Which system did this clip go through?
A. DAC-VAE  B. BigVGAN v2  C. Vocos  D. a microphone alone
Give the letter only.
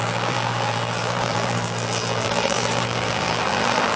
B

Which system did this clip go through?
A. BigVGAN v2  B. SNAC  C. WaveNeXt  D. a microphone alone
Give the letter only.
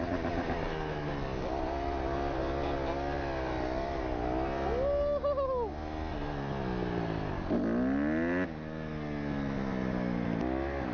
D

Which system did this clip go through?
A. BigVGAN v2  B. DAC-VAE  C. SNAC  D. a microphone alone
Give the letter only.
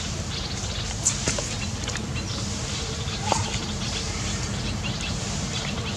A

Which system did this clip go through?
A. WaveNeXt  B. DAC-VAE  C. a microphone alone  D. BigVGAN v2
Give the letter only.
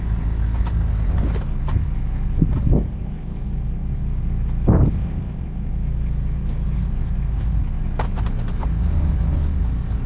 C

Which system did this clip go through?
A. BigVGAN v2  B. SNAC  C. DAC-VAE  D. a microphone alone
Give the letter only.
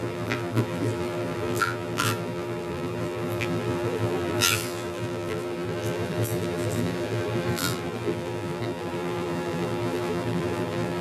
A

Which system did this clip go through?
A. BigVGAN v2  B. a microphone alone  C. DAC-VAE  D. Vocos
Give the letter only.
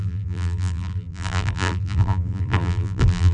A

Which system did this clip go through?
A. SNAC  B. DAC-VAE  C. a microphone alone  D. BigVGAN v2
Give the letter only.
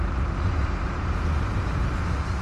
D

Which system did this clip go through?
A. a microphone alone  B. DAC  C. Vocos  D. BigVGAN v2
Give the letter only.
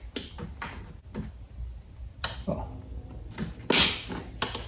A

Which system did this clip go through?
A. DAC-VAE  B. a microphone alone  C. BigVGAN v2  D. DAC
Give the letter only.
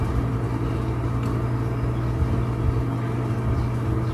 B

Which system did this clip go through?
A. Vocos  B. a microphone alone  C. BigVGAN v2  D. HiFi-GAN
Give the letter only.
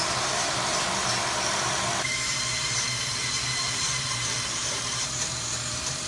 C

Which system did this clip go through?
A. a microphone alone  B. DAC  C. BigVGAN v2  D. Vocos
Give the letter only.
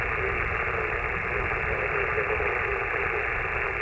A